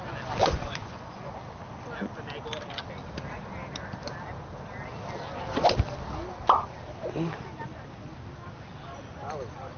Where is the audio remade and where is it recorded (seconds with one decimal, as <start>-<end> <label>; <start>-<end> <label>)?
0.0-0.4 recorded; 0.4-1.3 remade; 1.3-9.8 recorded